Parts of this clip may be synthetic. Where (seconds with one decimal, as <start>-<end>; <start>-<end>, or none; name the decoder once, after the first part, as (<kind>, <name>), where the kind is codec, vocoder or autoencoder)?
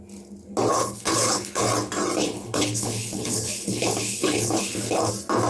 0.7-1.6 (codec, HILCodec); 2.2-5.1